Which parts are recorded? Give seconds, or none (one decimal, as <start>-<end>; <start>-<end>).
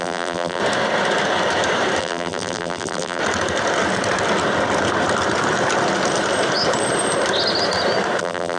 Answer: 0.6-2.0; 3.2-8.2